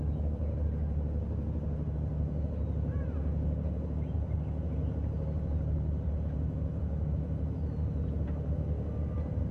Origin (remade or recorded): recorded